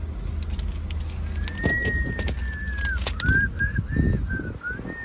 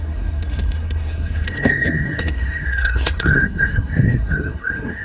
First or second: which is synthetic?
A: second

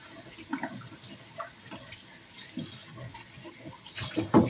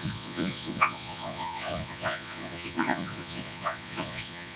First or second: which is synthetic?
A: second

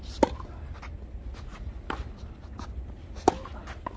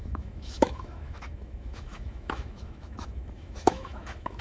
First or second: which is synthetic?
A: second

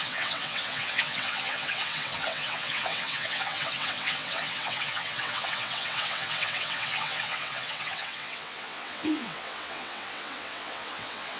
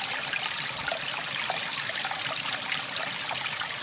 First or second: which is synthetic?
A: first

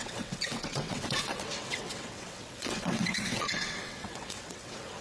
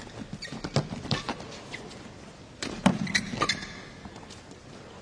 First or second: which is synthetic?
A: first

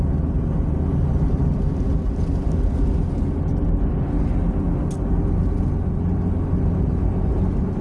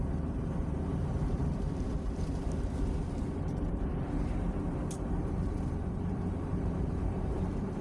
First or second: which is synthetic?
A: second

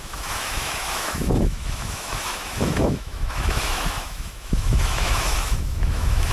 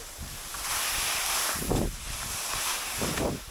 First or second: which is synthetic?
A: first